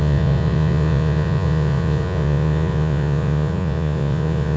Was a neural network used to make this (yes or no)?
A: yes